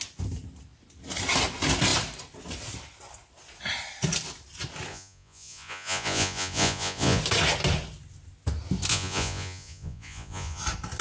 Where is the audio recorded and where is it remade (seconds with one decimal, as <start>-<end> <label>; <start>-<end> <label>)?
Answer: 0.0-4.9 recorded; 4.9-7.2 remade; 7.2-8.9 recorded; 8.9-10.6 remade; 10.6-11.0 recorded